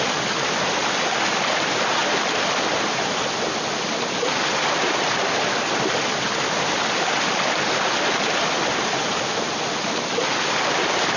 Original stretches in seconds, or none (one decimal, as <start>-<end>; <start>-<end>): 0.0-11.2